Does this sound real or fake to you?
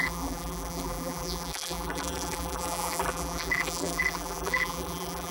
fake